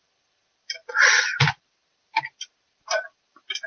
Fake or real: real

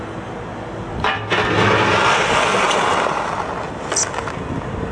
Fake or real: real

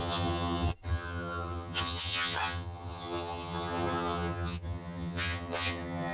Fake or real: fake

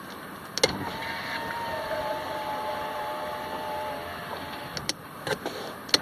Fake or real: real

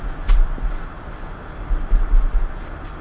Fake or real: real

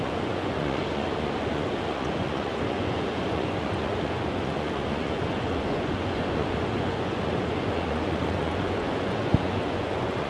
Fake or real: fake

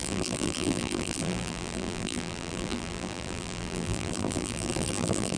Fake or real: fake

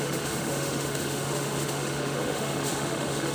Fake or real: fake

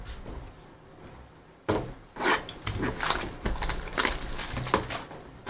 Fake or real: real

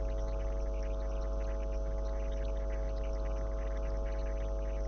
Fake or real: real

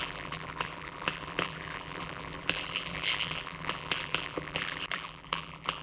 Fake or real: fake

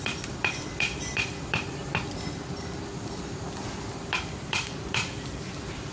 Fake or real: fake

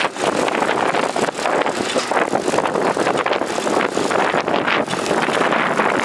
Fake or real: real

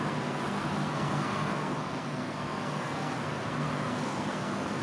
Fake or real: fake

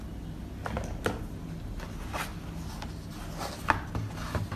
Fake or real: real